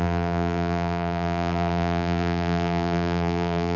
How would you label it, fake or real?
fake